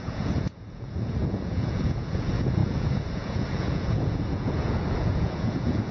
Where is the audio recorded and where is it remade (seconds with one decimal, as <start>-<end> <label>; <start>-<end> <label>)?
0.0-5.9 remade